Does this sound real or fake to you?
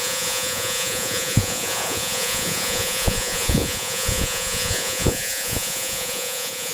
fake